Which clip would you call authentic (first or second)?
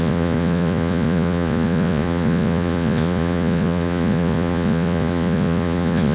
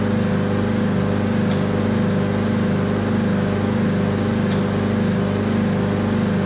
second